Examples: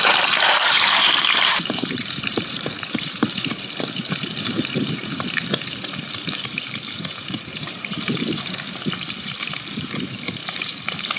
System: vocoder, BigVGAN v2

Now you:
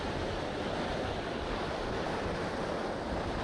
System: none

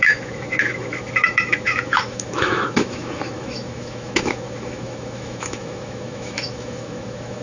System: autoencoder, DAC-VAE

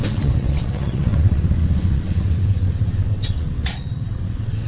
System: vocoder, WaveNeXt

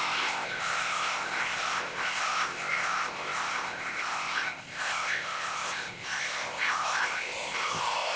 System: codec, ZipCodec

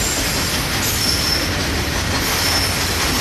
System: none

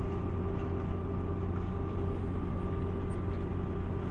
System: none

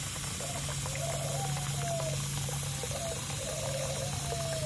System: none